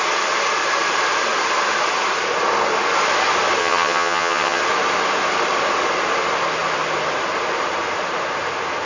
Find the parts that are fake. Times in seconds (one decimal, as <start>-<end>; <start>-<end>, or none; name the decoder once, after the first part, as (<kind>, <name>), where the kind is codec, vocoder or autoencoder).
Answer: 3.6-4.6 (vocoder, HiFi-GAN)